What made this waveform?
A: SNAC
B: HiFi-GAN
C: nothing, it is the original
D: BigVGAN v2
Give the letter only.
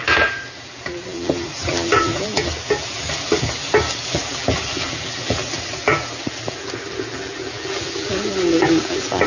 D